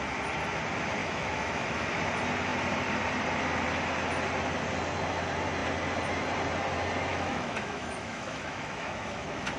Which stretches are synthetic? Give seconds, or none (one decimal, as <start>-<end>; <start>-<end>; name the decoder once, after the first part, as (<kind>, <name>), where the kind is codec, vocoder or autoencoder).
1.0-1.9 (autoencoder, DAC-VAE); 7.1-9.6